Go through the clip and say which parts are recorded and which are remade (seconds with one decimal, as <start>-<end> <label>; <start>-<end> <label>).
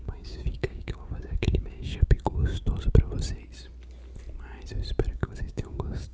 0.0-2.6 remade; 2.6-5.1 recorded; 5.1-6.1 remade